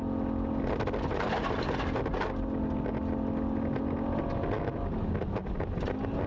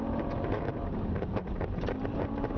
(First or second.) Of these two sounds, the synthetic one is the second